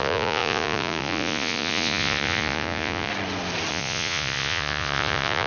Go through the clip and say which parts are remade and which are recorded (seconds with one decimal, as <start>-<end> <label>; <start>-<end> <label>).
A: 0.0-3.1 remade; 3.1-3.7 recorded; 3.7-5.5 remade